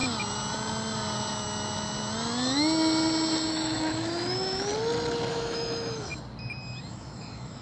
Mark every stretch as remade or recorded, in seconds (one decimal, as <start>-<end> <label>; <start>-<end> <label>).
0.0-3.5 recorded; 3.5-4.7 remade; 4.7-5.3 recorded; 5.3-6.1 remade; 6.1-6.9 recorded; 6.9-7.6 remade

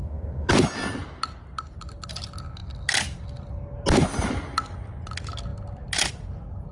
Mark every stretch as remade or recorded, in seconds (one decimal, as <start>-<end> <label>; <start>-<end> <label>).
0.0-0.5 remade; 0.5-6.7 recorded